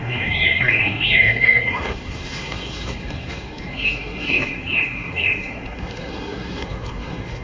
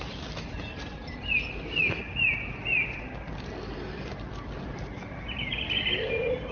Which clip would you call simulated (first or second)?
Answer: first